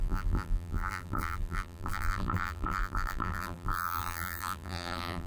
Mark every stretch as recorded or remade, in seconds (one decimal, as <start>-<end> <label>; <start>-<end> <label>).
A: 0.0-5.3 remade